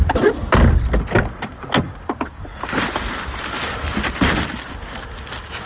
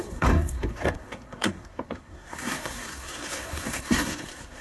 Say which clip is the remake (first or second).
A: second